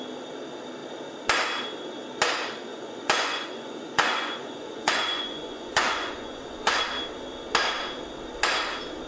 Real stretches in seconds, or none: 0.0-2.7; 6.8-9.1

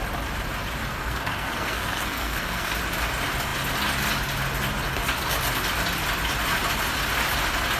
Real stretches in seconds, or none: 0.0-0.9; 2.8-7.8